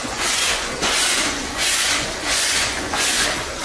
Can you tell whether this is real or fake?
fake